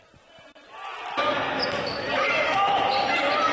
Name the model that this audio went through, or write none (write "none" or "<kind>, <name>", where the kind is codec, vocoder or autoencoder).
none